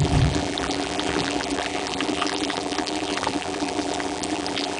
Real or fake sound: fake